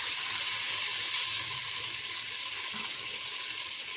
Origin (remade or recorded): recorded